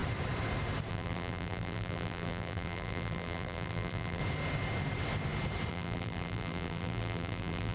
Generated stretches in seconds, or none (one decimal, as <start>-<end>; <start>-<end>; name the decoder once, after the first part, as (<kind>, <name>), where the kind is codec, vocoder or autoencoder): 0.9-4.2 (vocoder, BigVGAN v2); 5.7-7.7